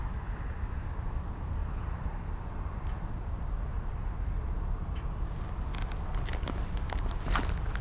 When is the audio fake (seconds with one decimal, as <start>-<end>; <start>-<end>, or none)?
none